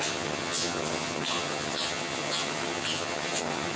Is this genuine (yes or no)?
no